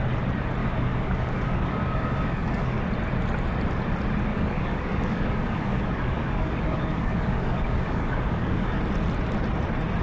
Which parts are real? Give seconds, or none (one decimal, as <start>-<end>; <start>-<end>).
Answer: 0.0-0.6; 2.8-4.3; 8.8-10.0